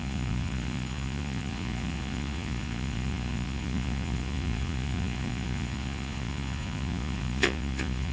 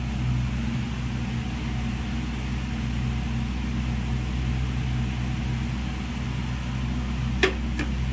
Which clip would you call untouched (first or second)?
second